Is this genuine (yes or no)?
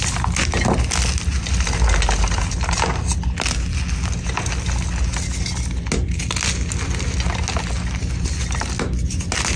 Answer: yes